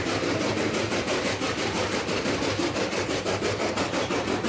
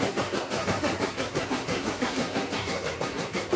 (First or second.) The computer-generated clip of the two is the second